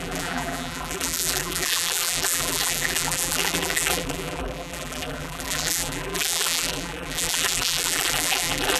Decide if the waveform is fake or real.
fake